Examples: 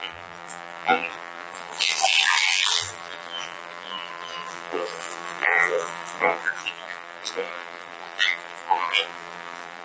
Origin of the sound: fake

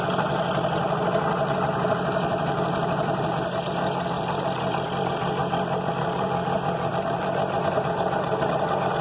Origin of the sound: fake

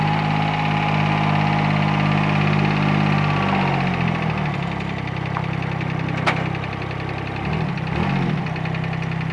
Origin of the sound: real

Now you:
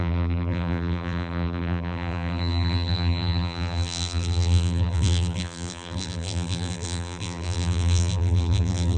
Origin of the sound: fake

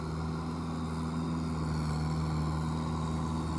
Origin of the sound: real